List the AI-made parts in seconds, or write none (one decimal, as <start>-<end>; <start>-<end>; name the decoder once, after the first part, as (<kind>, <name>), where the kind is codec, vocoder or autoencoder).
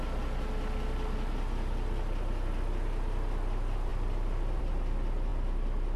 none